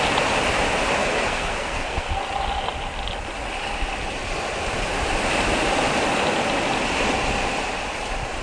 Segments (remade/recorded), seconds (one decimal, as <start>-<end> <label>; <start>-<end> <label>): 0.0-1.0 recorded; 1.0-2.2 remade; 2.2-8.4 recorded